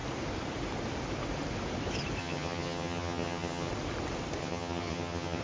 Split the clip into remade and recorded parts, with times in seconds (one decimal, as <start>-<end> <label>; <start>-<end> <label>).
0.0-2.2 recorded; 2.2-3.7 remade; 3.7-4.4 recorded; 4.4-5.4 remade